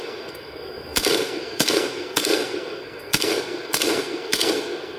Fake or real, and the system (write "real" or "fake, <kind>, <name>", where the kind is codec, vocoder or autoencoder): fake, codec, SNAC